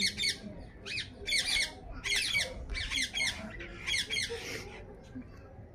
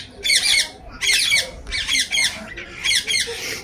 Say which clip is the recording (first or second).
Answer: first